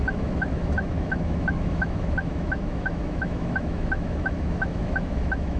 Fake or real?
fake